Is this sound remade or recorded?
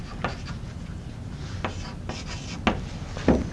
recorded